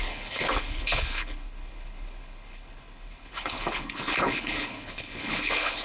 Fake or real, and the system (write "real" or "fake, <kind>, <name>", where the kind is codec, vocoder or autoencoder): fake, codec, HILCodec